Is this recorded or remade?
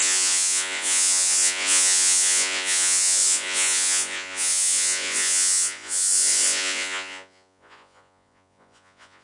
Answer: remade